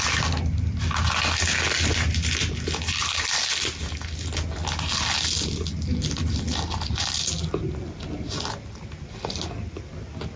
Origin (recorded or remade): recorded